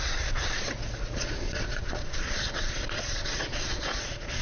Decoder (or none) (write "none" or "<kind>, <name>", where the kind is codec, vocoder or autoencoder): vocoder, Vocos